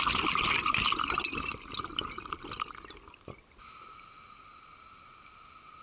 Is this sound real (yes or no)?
yes